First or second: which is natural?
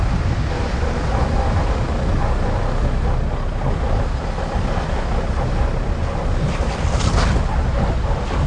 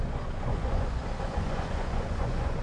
first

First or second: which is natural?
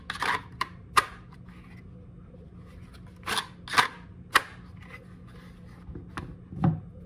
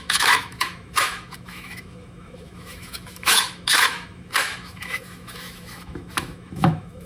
first